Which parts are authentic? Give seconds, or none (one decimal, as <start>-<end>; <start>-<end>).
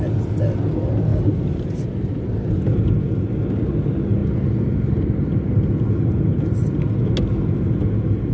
0.0-8.3